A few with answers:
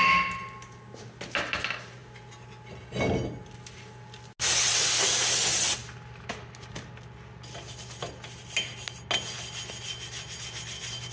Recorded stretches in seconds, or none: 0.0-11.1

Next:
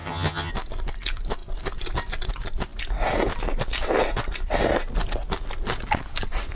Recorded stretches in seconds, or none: 0.5-6.5